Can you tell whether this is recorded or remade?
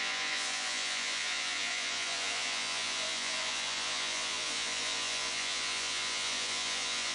remade